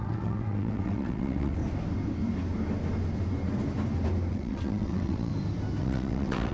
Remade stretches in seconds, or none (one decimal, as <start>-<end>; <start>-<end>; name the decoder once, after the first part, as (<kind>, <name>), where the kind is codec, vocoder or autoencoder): 0.0-1.6 (vocoder, WaveNeXt); 4.3-5.3; 5.8-6.5